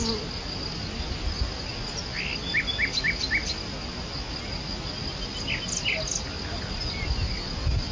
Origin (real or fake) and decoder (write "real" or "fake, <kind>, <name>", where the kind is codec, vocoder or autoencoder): real